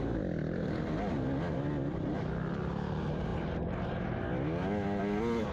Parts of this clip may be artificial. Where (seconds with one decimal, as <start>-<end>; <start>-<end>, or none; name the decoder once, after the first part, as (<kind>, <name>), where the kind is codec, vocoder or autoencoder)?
none